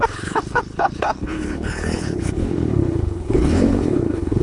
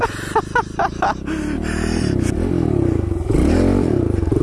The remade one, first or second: first